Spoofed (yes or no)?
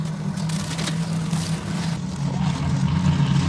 no